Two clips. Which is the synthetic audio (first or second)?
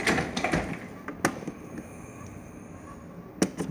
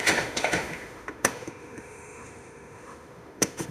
second